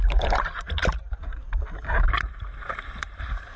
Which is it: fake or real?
fake